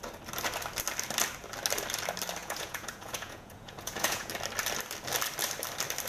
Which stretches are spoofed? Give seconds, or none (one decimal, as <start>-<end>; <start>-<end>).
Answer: 2.4-4.3